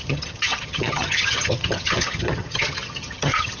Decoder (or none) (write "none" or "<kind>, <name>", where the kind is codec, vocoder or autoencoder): vocoder, HiFi-GAN